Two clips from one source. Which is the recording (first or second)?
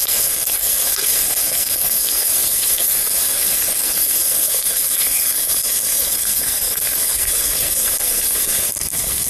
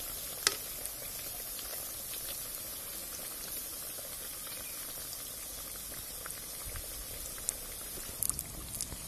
second